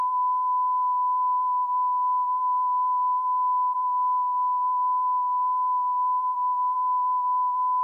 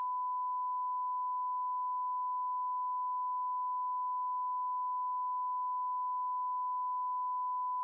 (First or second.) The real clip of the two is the second